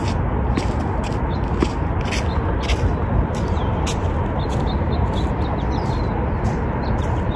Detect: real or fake real